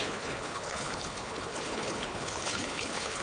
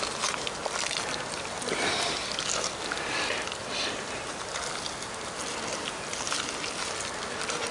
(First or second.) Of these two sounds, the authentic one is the second